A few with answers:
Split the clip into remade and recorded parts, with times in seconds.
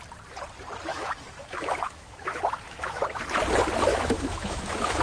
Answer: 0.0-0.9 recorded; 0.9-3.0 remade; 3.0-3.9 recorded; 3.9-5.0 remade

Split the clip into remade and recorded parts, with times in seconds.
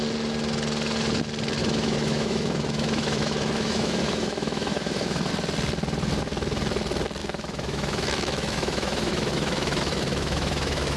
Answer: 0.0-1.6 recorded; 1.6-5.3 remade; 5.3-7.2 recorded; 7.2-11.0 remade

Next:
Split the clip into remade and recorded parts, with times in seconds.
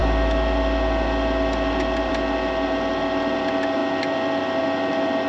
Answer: 0.0-5.3 recorded